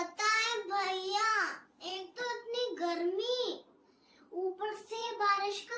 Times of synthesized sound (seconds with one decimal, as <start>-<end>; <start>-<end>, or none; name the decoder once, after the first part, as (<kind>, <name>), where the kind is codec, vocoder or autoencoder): 1.3-2.2 (vocoder, Vocos); 3.8-4.5; 5.0-5.8